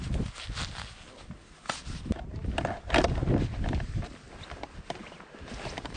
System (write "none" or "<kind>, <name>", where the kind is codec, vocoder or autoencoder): none